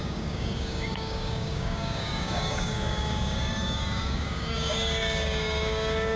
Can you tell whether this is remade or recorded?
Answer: remade